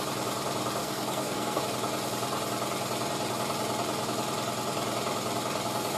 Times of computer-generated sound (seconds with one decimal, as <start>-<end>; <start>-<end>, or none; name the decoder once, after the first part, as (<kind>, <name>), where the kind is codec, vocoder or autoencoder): 0.8-1.6 (codec, SNAC)